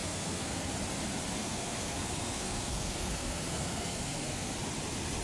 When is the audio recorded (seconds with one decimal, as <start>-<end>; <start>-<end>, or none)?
0.7-1.4; 4.5-5.2